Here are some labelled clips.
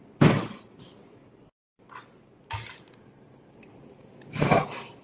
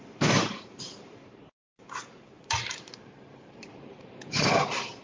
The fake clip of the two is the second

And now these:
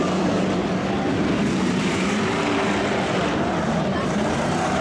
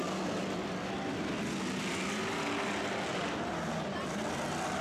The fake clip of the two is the first